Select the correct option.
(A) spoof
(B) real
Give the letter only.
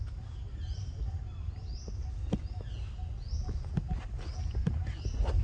B